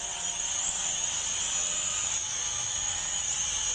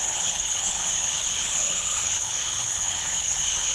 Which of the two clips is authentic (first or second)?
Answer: first